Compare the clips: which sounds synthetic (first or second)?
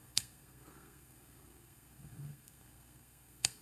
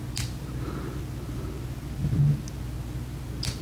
first